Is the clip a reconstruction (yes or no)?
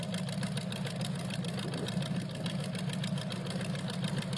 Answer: no